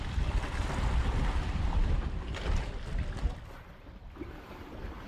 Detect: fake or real real